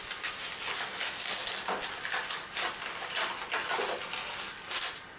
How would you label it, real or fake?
real